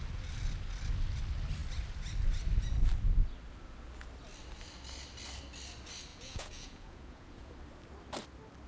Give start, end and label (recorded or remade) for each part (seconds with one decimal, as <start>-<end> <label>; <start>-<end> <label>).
0.0-6.1 recorded; 6.1-7.5 remade; 7.5-8.7 recorded